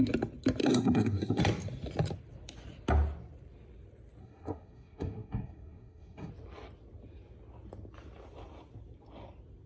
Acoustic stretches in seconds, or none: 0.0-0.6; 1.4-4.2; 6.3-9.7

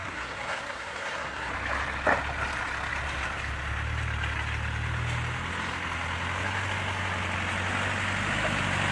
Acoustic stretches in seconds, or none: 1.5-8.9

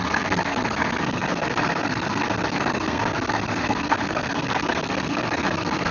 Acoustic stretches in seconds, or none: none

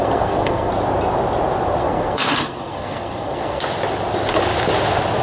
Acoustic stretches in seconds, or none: 0.7-1.8; 3.6-5.2